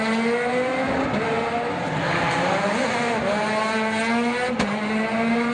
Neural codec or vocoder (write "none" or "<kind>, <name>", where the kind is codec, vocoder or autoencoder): none